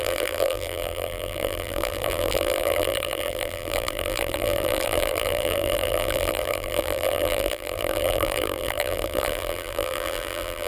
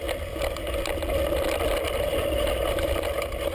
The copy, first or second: first